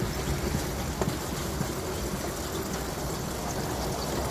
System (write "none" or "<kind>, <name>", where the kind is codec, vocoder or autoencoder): none